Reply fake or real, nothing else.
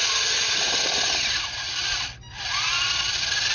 real